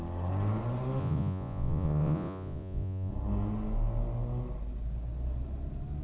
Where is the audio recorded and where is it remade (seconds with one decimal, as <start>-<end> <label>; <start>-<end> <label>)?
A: 0.0-1.0 recorded; 1.0-3.1 remade; 3.1-6.0 recorded